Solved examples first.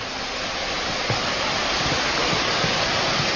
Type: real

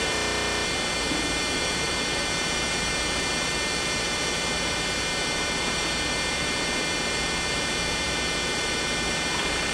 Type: fake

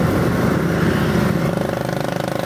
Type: real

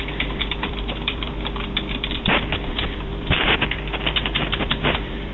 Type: fake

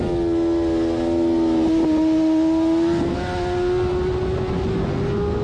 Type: real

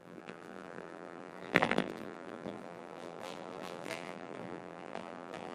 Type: fake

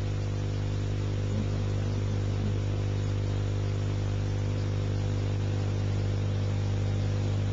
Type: real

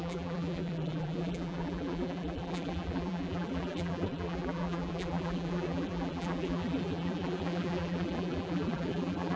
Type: fake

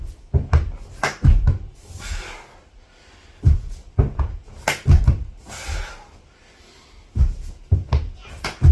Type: real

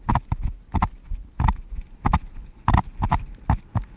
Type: real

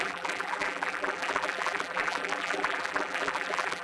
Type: fake